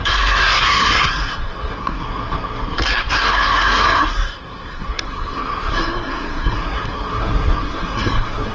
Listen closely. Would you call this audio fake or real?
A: fake